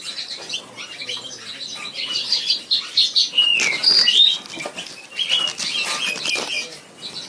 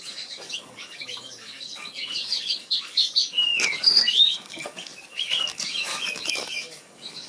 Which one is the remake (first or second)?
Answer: second